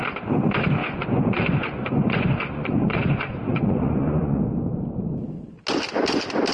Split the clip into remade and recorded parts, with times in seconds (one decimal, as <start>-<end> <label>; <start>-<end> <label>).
0.0-0.8 recorded; 0.8-4.4 remade; 4.4-6.5 recorded